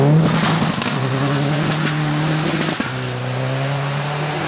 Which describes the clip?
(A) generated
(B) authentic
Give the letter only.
B